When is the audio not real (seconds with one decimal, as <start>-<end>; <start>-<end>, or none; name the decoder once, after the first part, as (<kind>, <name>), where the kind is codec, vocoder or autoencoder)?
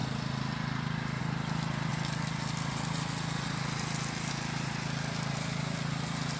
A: none